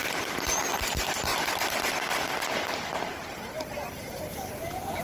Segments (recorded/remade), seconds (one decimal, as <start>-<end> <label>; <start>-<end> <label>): 0.0-0.5 recorded; 0.5-1.3 remade; 1.3-2.7 recorded; 2.7-5.0 remade